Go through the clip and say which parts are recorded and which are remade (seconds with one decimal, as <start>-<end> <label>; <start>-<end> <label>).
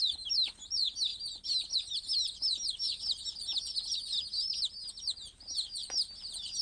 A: 0.0-6.6 recorded